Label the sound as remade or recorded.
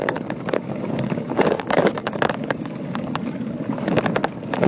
remade